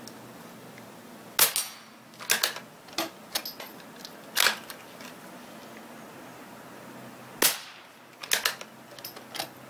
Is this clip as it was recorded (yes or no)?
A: yes